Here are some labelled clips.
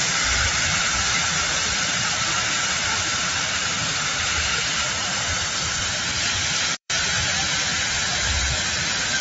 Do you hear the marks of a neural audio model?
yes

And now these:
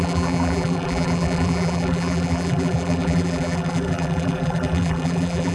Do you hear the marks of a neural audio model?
yes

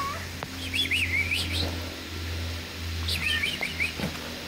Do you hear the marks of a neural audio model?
no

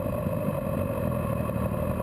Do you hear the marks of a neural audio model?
no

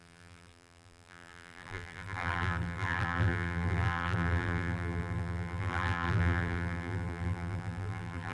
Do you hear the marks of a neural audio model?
yes